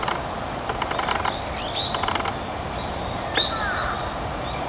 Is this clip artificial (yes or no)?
no